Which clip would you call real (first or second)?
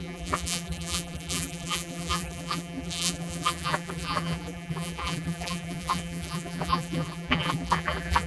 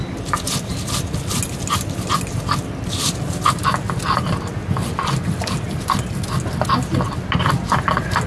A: second